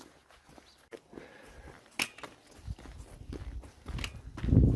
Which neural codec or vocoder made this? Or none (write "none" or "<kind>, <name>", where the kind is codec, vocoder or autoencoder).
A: none